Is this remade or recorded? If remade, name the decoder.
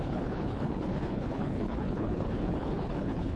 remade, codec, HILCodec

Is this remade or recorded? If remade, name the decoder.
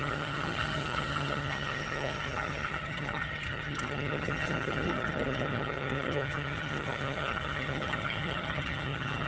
remade, vocoder, HiFi-GAN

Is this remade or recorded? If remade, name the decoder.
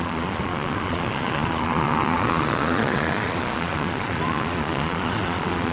remade, vocoder, Vocos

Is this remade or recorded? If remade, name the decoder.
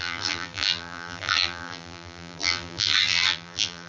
remade, vocoder, BigVGAN v2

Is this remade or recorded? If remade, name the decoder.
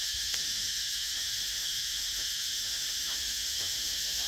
remade, autoencoder, DAC-VAE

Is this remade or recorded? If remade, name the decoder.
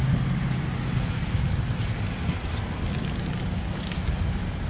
recorded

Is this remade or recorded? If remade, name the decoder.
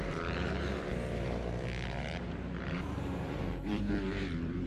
remade, vocoder, BigVGAN v2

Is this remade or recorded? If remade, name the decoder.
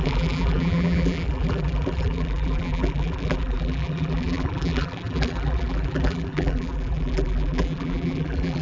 remade, vocoder, BigVGAN v2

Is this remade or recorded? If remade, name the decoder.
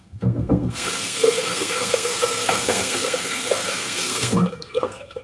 remade, codec, SNAC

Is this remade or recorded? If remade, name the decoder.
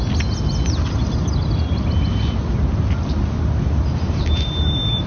recorded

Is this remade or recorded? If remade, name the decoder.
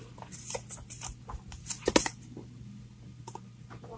recorded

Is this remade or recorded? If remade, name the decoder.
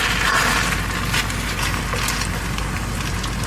recorded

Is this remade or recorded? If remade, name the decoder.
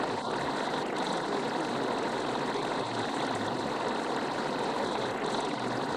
recorded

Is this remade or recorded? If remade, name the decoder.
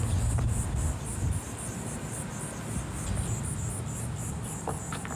recorded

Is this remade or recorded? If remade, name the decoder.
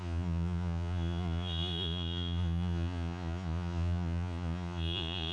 remade, vocoder, Vocos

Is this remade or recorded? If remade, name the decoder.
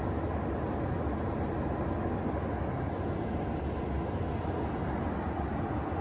recorded